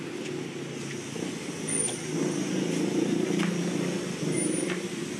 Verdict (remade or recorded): recorded